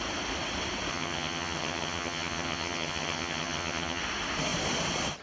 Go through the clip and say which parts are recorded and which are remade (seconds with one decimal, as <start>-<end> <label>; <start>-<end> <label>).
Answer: 0.0-0.9 recorded; 0.9-4.0 remade; 4.0-5.2 recorded